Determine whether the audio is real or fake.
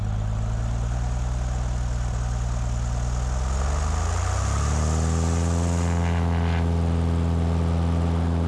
real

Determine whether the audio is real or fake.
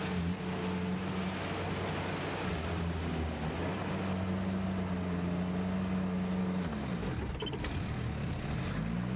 real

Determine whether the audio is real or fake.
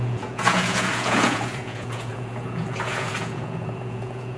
fake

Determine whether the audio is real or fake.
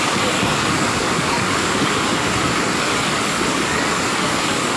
fake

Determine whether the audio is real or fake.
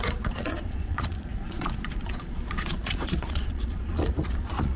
fake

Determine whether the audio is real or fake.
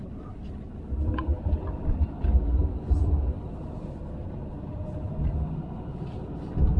fake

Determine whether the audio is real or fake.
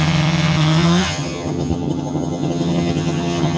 fake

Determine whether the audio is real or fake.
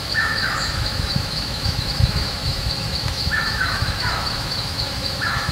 fake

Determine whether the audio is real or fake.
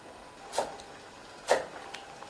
real